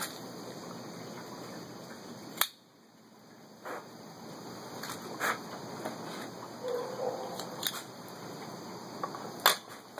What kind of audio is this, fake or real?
real